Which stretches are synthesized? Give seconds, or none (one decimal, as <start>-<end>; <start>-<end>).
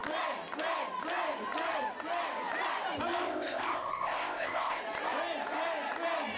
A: 3.2-4.8